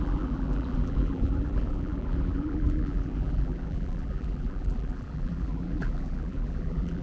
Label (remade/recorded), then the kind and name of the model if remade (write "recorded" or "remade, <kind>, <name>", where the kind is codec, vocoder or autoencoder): remade, vocoder, BigVGAN v2